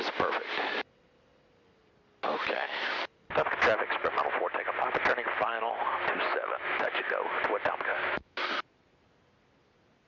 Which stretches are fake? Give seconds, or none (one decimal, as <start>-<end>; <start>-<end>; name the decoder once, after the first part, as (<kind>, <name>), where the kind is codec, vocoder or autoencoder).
6.3-7.0 (autoencoder, DAC-VAE); 7.9-8.4